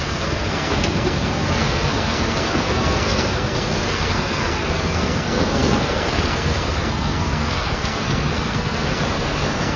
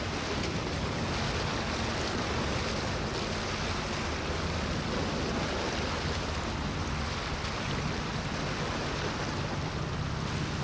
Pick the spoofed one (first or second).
first